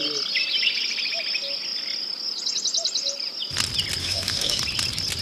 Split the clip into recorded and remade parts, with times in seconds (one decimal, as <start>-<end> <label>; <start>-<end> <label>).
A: 0.0-4.0 recorded; 4.0-4.6 remade; 4.6-5.2 recorded